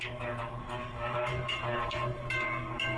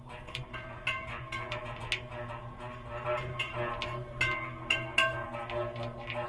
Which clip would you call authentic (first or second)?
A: second